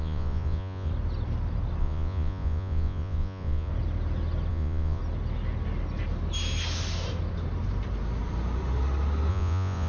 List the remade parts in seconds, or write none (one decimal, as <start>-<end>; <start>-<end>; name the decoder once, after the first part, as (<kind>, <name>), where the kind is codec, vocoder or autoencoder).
0.0-0.9 (vocoder, Vocos); 1.8-3.7; 4.5-5.0; 9.3-9.9